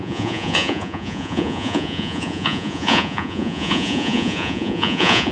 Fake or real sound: fake